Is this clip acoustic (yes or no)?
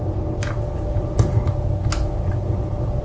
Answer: yes